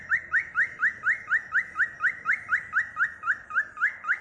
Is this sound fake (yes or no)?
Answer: no